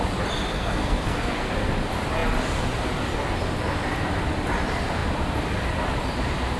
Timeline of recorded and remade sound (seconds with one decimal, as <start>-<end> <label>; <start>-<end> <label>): 0.0-0.5 recorded; 0.5-1.5 remade; 1.5-6.6 recorded